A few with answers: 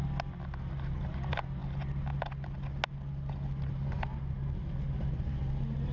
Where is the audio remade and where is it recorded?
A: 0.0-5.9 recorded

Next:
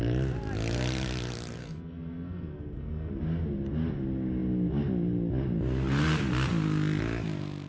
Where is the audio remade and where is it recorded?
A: 0.0-1.6 recorded; 1.6-3.1 remade; 3.1-7.7 recorded

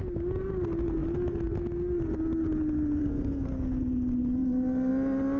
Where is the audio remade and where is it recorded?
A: 0.0-3.0 recorded; 3.0-3.5 remade; 3.5-5.4 recorded

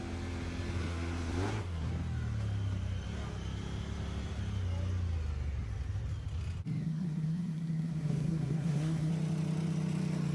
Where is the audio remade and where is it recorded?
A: 0.0-0.8 recorded; 0.8-1.9 remade; 1.9-6.8 recorded; 6.8-9.1 remade; 9.1-10.3 recorded

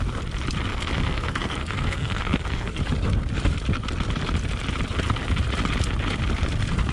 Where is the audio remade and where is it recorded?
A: 0.0-0.7 recorded; 0.7-2.8 remade; 2.8-6.9 recorded

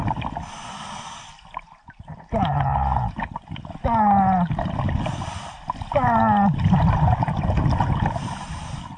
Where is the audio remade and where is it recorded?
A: 0.0-9.0 recorded